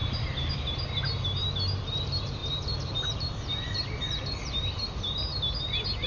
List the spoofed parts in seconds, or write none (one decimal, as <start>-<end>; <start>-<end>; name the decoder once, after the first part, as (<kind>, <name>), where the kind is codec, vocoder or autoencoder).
0.0-1.0 (vocoder, BigVGAN v2); 2.4-6.1